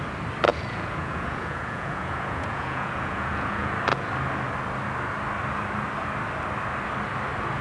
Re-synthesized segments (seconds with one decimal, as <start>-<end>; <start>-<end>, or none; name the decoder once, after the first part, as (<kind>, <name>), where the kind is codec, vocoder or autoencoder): 0.5-3.7 (vocoder, Vocos)